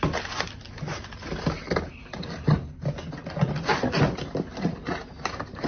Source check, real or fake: real